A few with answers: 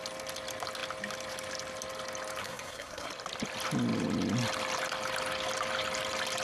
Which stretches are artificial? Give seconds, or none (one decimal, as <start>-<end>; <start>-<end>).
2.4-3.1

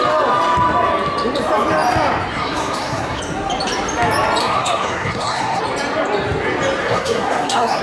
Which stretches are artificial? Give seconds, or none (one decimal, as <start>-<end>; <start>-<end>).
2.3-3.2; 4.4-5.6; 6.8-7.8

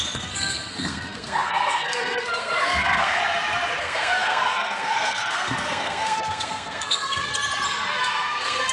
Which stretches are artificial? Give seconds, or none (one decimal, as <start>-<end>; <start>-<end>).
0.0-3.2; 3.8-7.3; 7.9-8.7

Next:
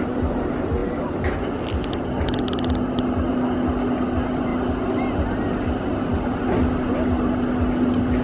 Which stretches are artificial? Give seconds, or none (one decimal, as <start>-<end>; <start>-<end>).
none

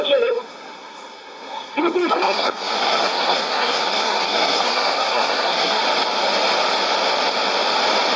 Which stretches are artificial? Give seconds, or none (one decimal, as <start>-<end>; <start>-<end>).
0.0-5.8

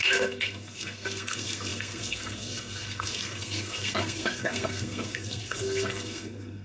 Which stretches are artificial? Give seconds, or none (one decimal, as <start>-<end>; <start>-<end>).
0.0-6.6

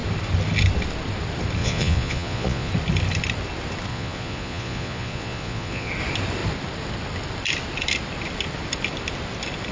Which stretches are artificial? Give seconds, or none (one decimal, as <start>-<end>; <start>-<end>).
1.6-2.7; 3.9-5.9